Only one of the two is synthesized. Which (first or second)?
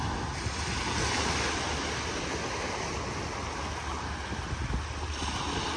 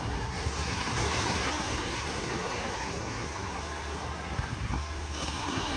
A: second